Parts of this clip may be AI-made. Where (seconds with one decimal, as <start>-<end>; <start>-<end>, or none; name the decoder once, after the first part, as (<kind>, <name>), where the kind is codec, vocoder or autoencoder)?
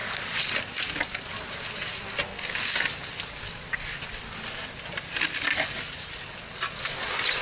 none